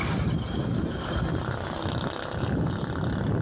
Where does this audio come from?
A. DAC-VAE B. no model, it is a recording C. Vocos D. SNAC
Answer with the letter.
B